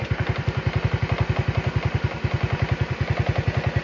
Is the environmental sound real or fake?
real